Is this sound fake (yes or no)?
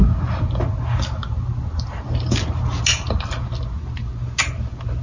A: no